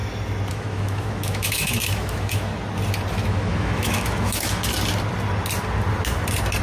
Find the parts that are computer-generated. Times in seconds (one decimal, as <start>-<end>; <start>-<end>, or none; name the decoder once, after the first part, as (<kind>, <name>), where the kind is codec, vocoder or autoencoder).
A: 0.5-2.5 (autoencoder, DAC-VAE); 3.1-4.7